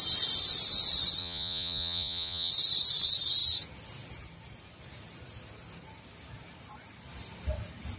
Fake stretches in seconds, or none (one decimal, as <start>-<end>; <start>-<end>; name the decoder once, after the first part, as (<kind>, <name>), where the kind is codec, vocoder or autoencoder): 1.2-2.5 (vocoder, Vocos)